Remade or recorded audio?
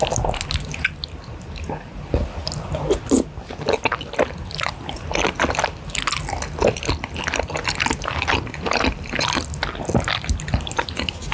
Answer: recorded